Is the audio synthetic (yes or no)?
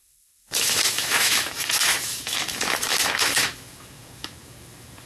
yes